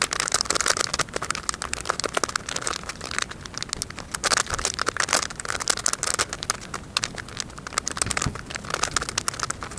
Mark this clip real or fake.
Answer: real